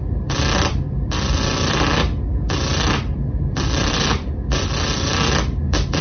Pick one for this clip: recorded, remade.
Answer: remade